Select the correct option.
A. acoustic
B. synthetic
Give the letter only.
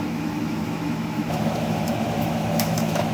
B